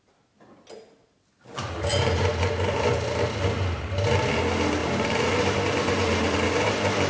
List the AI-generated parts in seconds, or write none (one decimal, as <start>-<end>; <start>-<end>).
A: 1.9-4.1; 4.8-7.1